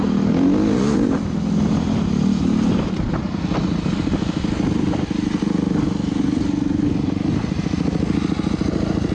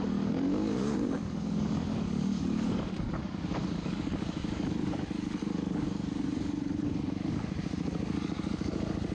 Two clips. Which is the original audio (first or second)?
first